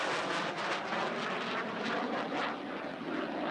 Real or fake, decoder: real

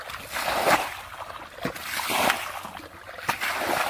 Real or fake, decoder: real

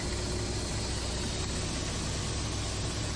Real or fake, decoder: real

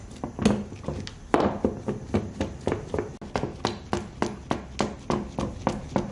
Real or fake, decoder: real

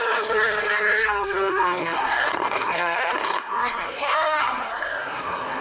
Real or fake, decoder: fake, codec, SNAC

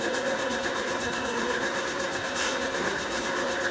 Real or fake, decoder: fake, codec, SNAC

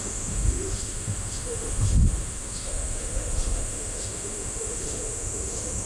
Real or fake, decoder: fake, autoencoder, DAC-VAE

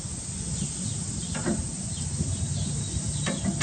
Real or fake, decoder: real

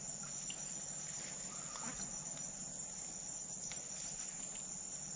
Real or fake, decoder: real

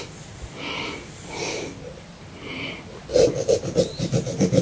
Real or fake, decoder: real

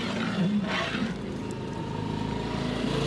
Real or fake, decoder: real